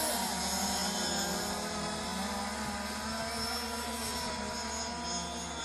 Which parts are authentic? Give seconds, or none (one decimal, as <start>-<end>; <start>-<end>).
2.1-5.6